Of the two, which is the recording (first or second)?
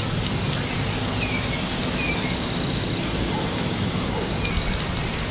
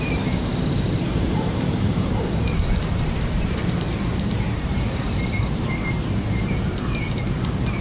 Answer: first